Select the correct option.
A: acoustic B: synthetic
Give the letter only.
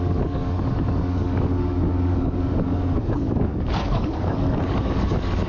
B